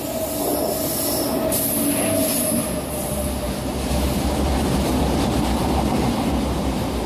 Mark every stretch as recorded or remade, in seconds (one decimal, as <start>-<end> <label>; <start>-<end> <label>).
0.0-7.1 recorded